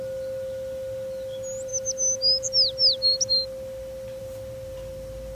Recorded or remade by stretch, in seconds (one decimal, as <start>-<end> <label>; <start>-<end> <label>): 0.0-5.3 recorded